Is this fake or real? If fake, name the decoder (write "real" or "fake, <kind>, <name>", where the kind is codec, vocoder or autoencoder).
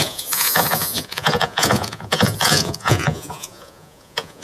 fake, vocoder, Vocos